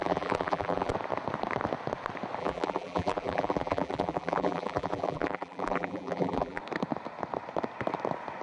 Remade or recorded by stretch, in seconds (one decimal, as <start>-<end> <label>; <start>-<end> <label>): 0.0-0.9 remade; 0.9-2.4 recorded; 2.4-6.6 remade; 6.6-8.4 recorded